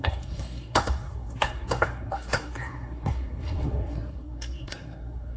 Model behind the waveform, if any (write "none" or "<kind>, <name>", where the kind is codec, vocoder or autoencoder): codec, SNAC